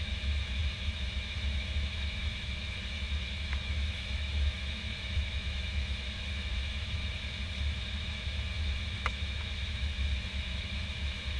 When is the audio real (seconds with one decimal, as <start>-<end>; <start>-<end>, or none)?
7.0-7.6